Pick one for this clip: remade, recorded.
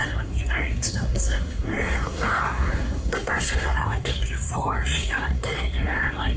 remade